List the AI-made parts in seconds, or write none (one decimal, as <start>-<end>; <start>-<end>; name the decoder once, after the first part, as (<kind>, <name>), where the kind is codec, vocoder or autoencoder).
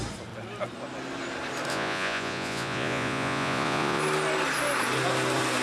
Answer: 1.7-4.0 (vocoder, Vocos)